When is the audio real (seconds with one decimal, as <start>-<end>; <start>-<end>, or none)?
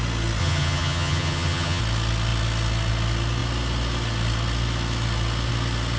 0.0-0.4; 1.8-6.0